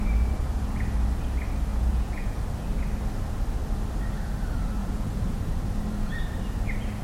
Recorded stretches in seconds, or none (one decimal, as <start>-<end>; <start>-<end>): 0.0-1.7; 2.4-4.8; 5.4-7.0